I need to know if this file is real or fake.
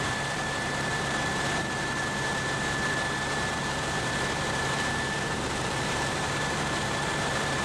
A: fake